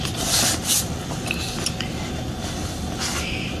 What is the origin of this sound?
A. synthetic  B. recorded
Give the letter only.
B